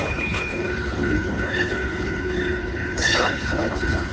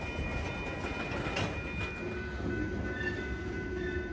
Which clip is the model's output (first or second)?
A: first